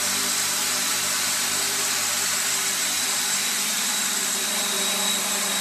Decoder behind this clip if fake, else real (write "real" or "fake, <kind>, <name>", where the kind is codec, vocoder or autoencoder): fake, vocoder, BigVGAN v2